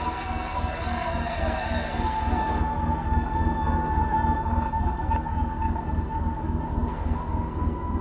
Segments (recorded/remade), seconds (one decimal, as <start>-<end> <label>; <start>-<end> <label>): 0.0-8.0 remade